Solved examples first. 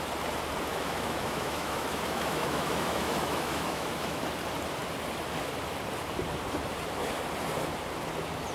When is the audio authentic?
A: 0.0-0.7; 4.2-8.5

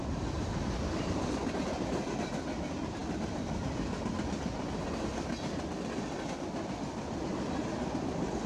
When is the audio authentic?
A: 0.0-8.5

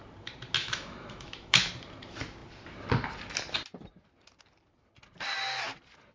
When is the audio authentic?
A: 0.0-0.6; 1.7-6.1